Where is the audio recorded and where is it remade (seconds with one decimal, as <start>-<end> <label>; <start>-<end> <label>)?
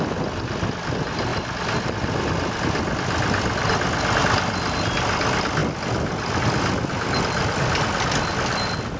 0.0-9.0 recorded